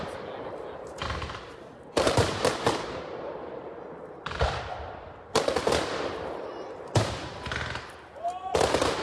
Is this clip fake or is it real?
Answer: real